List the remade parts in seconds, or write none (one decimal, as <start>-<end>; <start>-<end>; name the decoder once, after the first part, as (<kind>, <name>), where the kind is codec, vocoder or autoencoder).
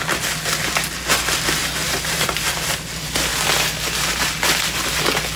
1.6-2.9 (vocoder, BigVGAN v2)